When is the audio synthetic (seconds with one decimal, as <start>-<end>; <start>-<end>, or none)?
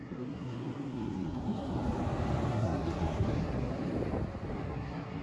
0.0-1.7; 2.5-3.7; 4.5-5.2